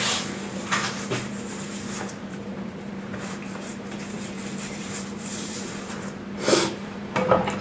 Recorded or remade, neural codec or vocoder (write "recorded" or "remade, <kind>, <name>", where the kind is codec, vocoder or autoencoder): remade, vocoder, BigVGAN v2